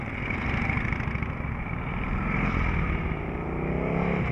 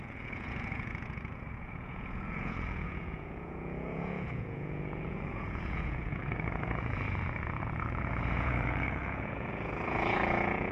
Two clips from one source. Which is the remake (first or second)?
second